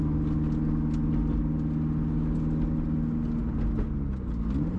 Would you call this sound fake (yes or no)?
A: no